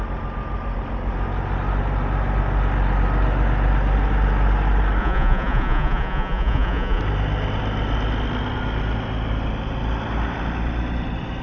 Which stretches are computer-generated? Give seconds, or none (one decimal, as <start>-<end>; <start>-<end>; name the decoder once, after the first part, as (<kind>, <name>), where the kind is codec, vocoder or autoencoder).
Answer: 5.0-7.0 (vocoder, Vocos)